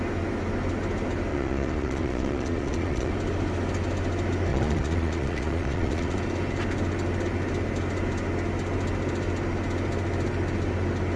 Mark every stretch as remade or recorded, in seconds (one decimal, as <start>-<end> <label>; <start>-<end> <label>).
0.0-1.3 recorded; 1.3-3.1 remade; 3.1-4.5 recorded; 4.5-6.2 remade; 6.2-11.2 recorded